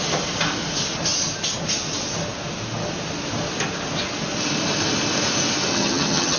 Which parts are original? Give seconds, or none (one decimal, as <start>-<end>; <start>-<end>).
0.0-5.7

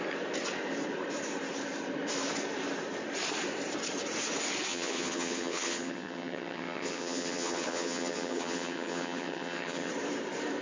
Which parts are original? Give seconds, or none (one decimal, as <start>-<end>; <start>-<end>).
0.0-4.7; 9.9-10.6

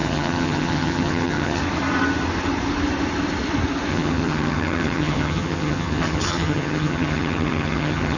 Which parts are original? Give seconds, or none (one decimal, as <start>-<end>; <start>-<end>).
1.6-3.9

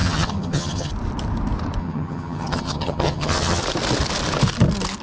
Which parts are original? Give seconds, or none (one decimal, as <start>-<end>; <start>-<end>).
0.9-1.8; 3.6-5.0

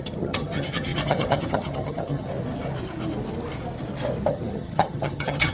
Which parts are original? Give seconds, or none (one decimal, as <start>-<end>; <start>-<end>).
2.3-4.3

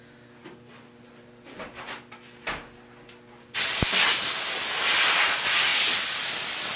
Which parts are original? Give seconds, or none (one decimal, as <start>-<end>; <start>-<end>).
0.0-6.8